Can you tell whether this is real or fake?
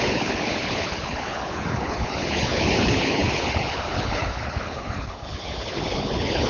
fake